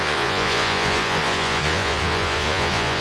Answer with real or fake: fake